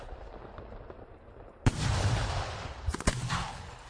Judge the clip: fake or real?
real